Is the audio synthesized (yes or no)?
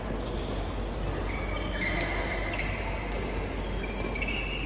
no